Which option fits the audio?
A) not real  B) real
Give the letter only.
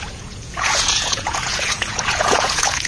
A